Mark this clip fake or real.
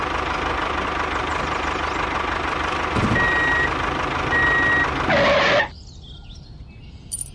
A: real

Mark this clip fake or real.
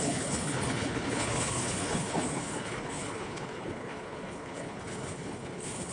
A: fake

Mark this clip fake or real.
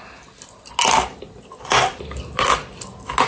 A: real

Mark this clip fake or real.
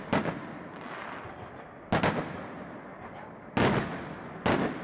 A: real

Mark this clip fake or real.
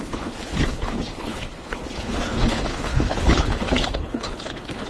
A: fake